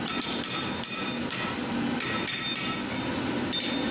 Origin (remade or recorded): recorded